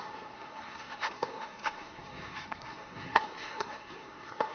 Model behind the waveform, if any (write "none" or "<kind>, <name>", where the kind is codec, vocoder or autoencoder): codec, SNAC